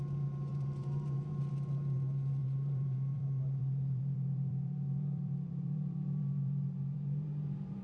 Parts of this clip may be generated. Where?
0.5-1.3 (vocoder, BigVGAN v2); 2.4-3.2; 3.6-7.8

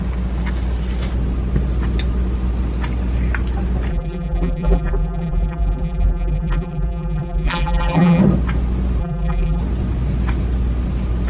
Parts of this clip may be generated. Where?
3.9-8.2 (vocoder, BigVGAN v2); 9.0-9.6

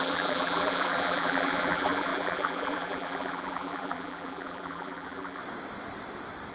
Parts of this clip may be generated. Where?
0.0-5.4 (vocoder, BigVGAN v2)

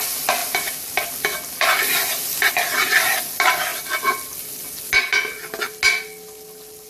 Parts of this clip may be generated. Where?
none